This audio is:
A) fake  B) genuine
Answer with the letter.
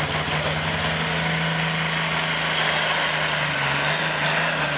B